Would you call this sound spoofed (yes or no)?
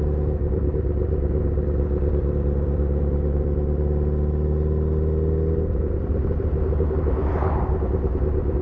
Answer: no